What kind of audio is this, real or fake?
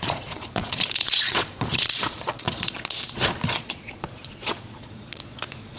fake